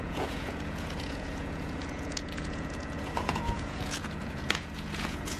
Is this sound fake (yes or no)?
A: yes